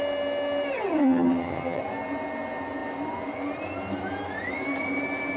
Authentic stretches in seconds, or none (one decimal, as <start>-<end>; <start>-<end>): 0.0-1.0; 1.8-5.4